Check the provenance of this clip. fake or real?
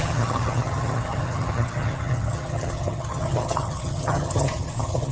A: fake